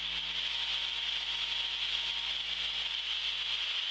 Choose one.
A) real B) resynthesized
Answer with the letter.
A